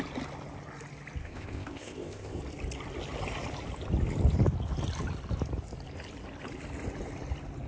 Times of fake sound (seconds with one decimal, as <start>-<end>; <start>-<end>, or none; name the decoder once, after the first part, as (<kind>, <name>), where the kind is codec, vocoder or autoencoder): 1.2-2.4 (codec, ZipCodec)